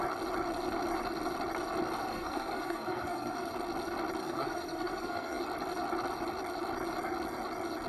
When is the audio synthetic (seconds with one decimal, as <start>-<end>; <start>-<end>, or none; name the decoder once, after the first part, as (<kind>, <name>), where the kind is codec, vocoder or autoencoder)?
2.1-3.5 (codec, SNAC); 4.2-5.4